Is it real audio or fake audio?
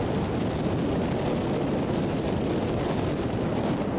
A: real